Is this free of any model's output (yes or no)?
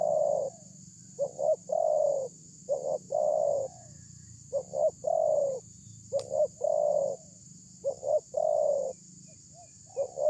yes